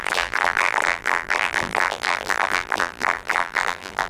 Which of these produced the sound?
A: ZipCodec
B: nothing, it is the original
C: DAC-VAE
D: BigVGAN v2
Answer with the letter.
D